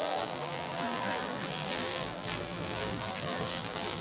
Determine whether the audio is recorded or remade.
remade